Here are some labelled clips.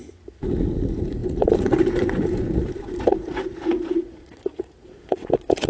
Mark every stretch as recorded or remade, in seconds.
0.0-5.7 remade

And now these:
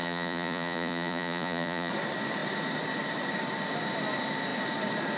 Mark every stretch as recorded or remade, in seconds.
0.0-1.9 remade; 1.9-5.2 recorded

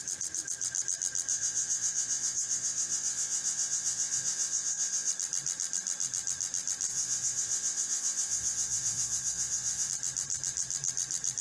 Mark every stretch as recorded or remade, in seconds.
0.0-1.3 recorded; 1.3-5.1 remade; 5.1-6.9 recorded; 6.9-9.9 remade; 9.9-11.4 recorded

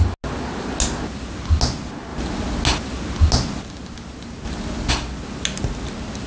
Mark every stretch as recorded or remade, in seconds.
0.0-6.3 recorded